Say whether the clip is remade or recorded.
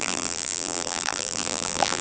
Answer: remade